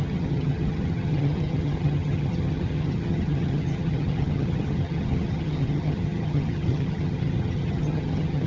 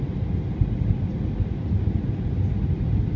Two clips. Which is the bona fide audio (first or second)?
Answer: second